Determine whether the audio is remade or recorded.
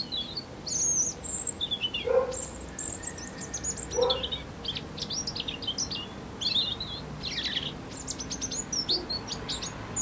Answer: recorded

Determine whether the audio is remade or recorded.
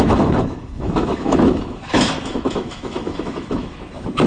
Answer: remade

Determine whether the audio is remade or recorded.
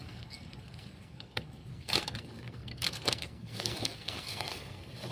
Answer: remade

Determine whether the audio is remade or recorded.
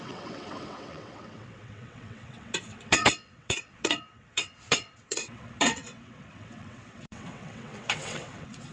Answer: remade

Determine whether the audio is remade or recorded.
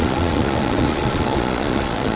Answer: remade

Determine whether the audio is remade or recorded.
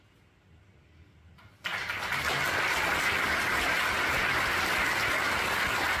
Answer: recorded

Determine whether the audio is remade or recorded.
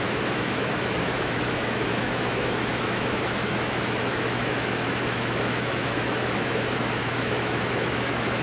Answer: remade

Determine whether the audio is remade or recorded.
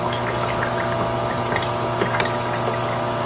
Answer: recorded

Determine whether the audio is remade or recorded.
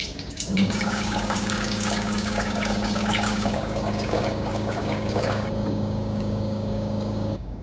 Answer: remade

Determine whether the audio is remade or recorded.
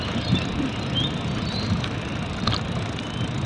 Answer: recorded